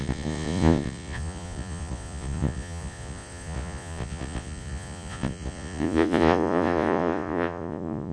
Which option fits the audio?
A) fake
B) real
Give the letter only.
A